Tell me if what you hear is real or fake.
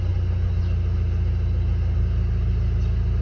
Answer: real